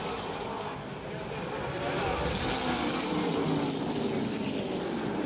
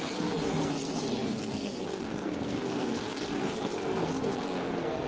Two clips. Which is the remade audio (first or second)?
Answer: second